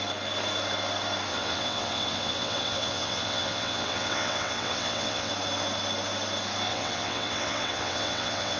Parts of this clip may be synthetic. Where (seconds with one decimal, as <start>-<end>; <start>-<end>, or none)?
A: 1.3-5.3; 6.7-8.6